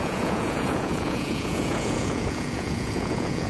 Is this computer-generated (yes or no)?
yes